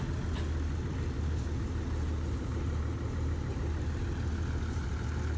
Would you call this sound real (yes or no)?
yes